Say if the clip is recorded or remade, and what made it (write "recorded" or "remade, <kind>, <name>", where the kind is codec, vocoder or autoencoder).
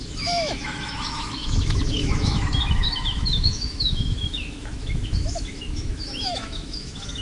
remade, autoencoder, DAC-VAE